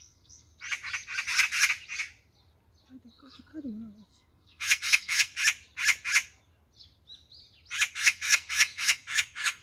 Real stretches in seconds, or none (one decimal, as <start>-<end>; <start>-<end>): 0.5-3.1; 3.5-4.1; 5.3-7.9